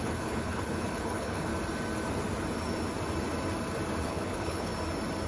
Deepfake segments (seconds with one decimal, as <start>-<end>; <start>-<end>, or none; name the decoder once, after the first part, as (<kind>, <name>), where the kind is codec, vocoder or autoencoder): 0.0-1.5 (codec, HILCodec); 4.0-4.7